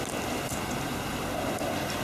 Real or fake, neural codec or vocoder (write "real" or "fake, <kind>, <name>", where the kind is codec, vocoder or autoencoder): real